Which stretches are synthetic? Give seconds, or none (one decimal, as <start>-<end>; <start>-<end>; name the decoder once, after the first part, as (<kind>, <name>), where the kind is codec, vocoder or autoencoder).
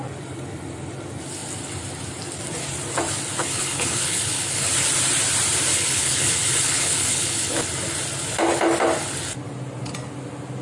3.4-4.7 (codec, HILCodec); 5.7-7.6